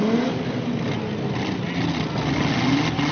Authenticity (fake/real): real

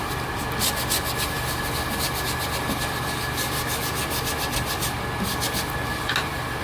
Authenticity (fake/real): real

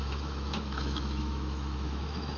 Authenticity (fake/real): fake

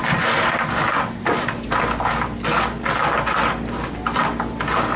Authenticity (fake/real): real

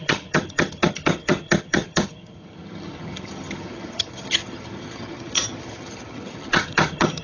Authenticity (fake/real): fake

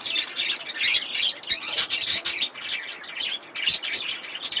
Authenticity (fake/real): real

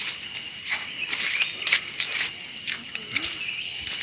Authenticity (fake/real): real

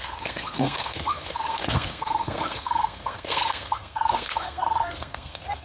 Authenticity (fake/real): fake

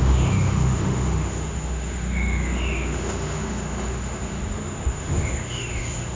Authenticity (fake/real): fake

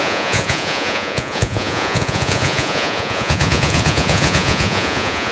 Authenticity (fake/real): fake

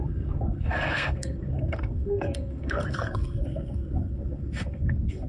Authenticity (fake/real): fake